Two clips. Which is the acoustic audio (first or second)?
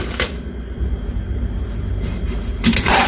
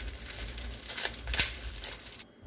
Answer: second